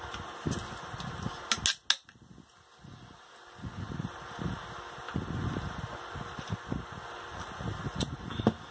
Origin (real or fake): real